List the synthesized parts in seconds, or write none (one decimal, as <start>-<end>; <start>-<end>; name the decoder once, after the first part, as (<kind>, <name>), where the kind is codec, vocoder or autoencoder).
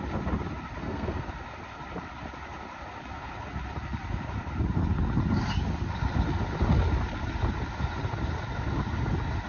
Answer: 0.8-1.3 (codec, SNAC)